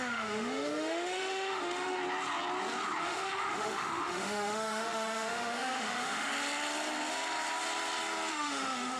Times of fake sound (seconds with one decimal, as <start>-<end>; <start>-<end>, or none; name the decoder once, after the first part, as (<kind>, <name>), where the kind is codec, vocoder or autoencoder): 0.0-2.0 (autoencoder, DAC-VAE); 3.0-6.3; 8.3-9.0